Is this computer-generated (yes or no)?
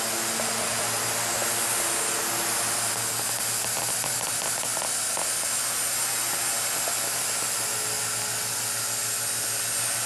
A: no